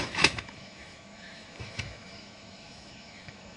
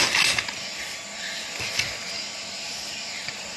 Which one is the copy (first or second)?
first